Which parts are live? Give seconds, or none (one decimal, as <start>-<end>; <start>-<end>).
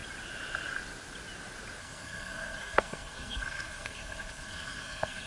0.0-1.8